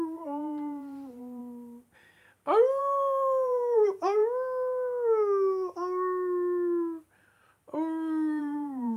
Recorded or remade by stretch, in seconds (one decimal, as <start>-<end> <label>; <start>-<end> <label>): 0.0-1.4 remade; 1.4-2.8 recorded; 2.8-4.2 remade; 4.2-8.4 recorded; 8.4-9.0 remade